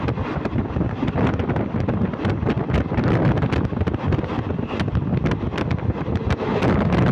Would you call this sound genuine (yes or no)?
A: yes